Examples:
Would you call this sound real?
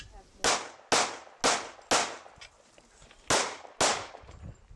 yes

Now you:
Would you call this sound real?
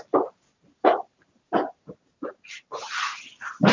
yes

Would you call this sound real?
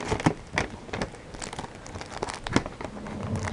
yes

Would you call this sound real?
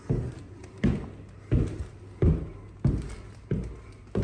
yes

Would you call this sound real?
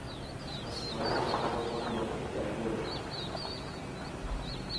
yes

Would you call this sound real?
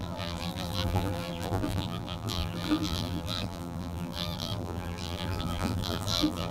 no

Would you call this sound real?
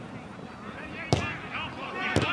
yes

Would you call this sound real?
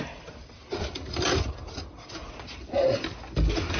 no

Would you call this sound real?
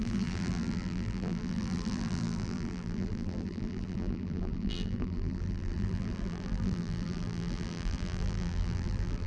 no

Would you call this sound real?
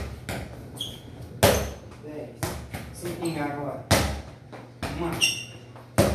yes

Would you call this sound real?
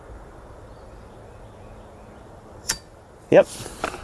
no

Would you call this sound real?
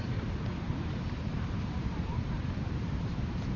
no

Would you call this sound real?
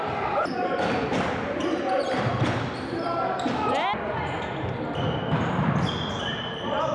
yes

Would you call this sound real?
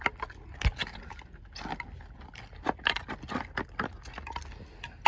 yes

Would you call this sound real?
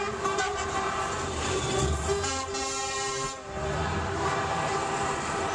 no